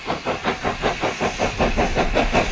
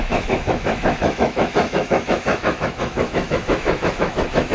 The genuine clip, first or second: first